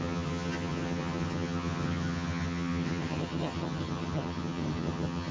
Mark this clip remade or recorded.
remade